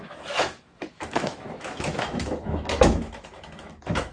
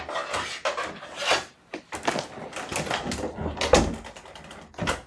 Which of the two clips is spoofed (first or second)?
first